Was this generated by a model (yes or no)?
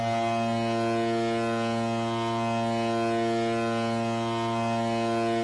no